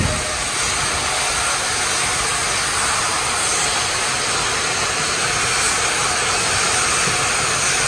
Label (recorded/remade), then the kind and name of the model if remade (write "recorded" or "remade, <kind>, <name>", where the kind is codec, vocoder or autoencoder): recorded